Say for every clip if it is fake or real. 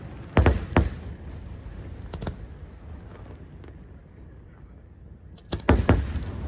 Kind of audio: real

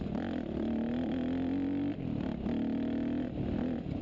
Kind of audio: real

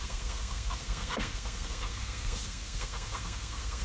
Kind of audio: fake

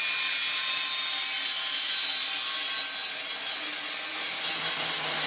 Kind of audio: real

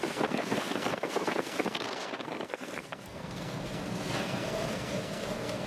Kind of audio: fake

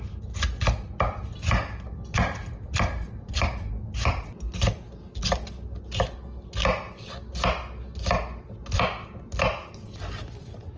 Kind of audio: real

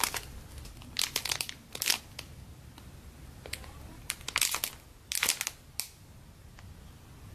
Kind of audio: real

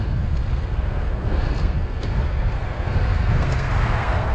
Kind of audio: fake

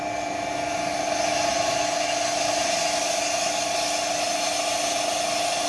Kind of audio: real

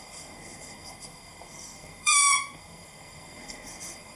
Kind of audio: fake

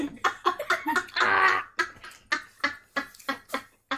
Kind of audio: real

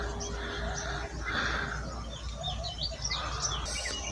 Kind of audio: real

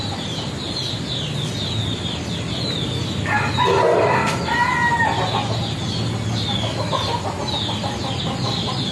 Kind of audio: real